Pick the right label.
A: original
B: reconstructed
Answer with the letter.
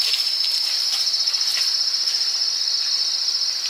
A